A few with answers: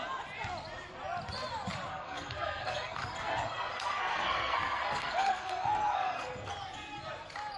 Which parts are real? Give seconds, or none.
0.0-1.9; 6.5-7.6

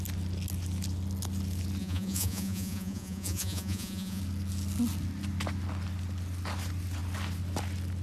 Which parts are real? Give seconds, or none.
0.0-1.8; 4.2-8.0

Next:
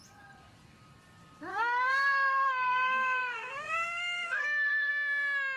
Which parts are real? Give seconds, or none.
0.0-1.5; 4.9-5.6

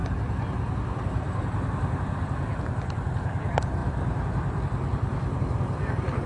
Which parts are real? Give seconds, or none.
2.4-3.8

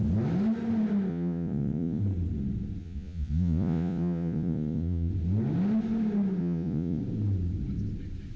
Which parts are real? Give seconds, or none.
0.0-1.1; 2.0-2.8; 5.1-6.4; 7.0-8.4